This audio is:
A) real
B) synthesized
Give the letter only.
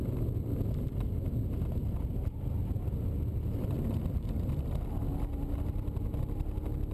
A